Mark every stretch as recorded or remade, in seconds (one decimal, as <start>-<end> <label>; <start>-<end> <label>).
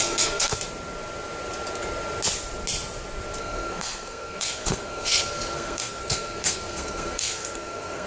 0.0-0.5 remade; 0.5-3.4 recorded; 3.4-8.1 remade